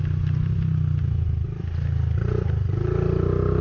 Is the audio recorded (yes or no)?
yes